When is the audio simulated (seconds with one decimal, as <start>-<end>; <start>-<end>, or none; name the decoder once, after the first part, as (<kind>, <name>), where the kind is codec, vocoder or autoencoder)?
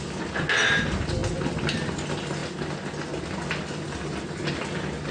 none